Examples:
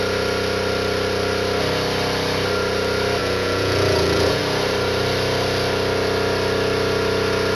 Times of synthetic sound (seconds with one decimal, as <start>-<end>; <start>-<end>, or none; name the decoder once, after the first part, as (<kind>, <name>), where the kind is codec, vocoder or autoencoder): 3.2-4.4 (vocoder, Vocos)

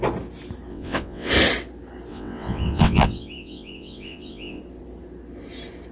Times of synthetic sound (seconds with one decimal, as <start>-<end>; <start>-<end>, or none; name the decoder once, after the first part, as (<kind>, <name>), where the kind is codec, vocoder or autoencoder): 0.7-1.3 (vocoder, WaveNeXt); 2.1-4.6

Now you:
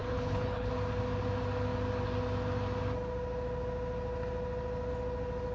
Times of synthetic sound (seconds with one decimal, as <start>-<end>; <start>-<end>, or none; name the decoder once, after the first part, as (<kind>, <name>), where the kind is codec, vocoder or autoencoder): 0.0-0.7 (codec, HILCodec)

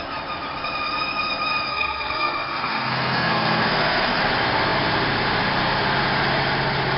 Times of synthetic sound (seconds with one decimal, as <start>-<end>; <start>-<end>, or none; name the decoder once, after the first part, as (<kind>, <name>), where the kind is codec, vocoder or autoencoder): 1.7-4.2 (codec, SNAC)

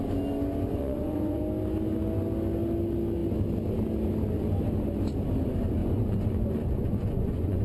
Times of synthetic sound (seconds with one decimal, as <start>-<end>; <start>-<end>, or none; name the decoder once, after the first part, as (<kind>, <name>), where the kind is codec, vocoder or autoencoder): 0.7-1.4 (vocoder, Vocos); 5.8-7.6